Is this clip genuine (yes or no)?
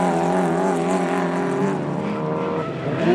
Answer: yes